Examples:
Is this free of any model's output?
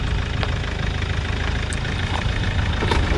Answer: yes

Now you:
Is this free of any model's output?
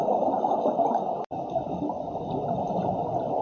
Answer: yes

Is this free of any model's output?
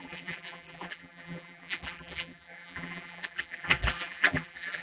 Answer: no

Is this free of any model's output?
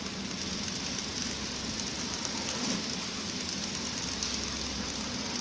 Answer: yes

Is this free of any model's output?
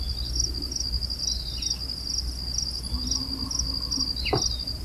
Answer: yes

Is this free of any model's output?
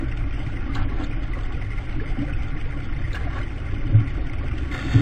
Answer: yes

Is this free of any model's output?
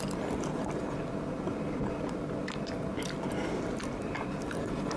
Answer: no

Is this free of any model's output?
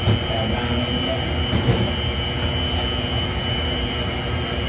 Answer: yes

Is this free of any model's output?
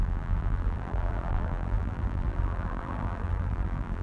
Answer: no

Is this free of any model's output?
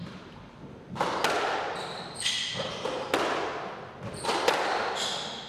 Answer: yes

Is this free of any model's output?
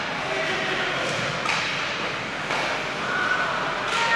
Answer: yes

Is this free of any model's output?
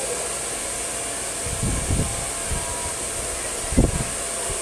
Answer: yes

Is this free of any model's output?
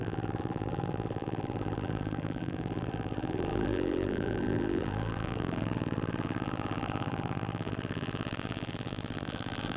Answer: no